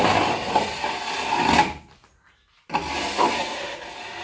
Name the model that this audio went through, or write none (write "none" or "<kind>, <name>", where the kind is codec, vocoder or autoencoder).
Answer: none